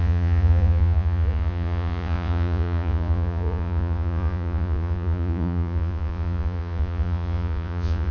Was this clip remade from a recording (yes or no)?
yes